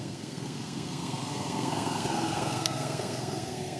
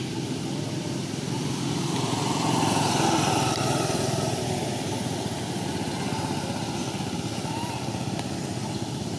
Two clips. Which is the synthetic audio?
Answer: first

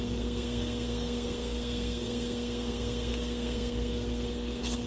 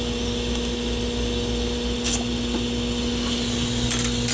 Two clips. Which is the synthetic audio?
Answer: first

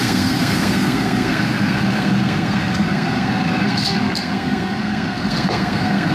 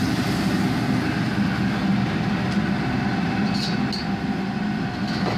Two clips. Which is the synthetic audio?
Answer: first